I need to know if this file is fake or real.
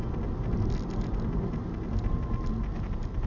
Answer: real